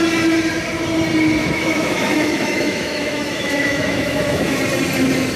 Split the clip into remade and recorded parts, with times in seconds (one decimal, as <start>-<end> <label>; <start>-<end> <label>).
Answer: 0.0-1.4 recorded; 1.4-4.6 remade; 4.6-5.4 recorded